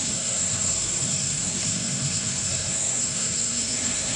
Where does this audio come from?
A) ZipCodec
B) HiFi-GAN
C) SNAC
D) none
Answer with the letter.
C